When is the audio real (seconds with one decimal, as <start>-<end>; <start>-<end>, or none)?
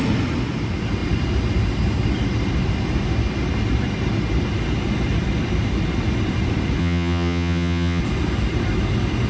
0.0-6.8; 8.0-9.3